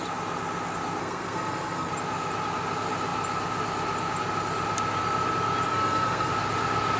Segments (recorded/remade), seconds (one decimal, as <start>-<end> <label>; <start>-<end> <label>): 0.0-1.0 recorded; 1.0-1.9 remade; 1.9-5.7 recorded; 5.7-6.3 remade; 6.3-7.0 recorded